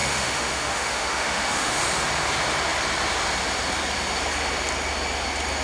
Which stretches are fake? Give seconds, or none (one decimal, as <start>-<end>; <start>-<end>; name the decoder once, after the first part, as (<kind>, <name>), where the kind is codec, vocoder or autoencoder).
0.0-1.8 (autoencoder, DAC-VAE)